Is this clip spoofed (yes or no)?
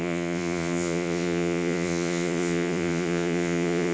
yes